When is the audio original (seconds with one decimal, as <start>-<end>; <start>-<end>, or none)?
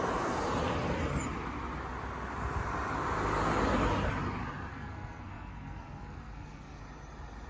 0.0-4.7; 6.8-7.5